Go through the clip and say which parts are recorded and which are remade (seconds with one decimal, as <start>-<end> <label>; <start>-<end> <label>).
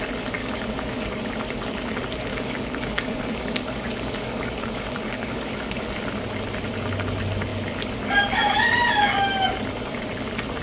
0.0-0.4 recorded; 0.4-1.3 remade; 1.3-2.3 recorded; 2.3-5.8 remade; 5.8-10.6 recorded